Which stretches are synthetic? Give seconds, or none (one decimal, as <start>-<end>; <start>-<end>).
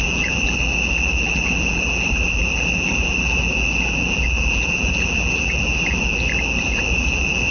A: 0.0-7.5